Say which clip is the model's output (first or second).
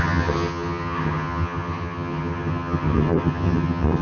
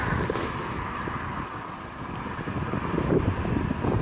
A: first